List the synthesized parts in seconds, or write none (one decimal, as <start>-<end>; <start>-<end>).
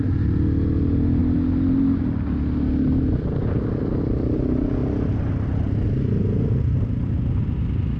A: none